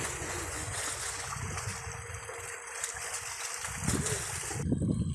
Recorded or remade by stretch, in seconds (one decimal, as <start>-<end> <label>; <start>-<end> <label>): 0.0-1.7 remade; 1.7-5.1 recorded